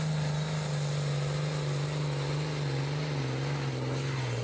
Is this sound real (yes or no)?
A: yes